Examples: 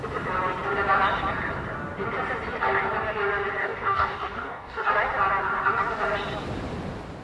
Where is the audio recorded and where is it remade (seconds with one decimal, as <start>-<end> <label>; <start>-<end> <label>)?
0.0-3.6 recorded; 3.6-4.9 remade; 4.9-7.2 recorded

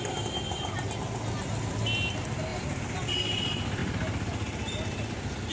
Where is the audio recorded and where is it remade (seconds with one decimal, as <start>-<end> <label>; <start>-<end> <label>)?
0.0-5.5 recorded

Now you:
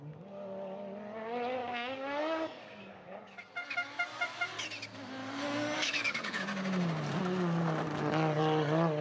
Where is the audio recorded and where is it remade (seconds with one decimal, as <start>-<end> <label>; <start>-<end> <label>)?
0.0-1.6 recorded; 1.6-3.4 remade; 3.4-5.2 recorded; 5.2-6.4 remade; 6.4-9.0 recorded

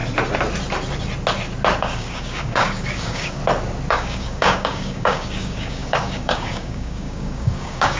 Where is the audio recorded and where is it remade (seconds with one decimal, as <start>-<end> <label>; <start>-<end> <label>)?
0.0-1.8 recorded; 1.8-3.4 remade; 3.4-3.9 recorded; 3.9-8.0 remade

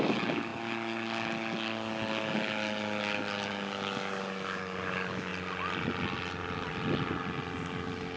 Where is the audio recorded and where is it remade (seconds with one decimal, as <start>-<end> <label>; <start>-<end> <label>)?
0.0-5.3 remade; 5.3-8.2 recorded

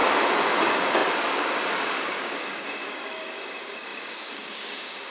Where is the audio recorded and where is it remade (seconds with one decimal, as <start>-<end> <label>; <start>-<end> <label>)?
0.0-0.6 recorded; 0.6-5.1 remade